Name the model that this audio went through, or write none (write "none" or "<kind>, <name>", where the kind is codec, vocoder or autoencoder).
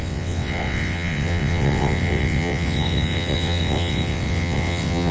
vocoder, WaveNeXt